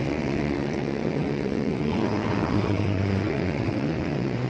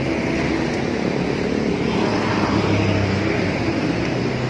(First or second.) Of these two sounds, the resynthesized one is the first